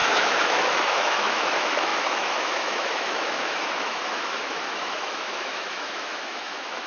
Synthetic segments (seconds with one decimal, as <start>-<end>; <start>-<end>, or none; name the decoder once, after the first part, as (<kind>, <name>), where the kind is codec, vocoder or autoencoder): 0.0-6.9 (autoencoder, DAC-VAE)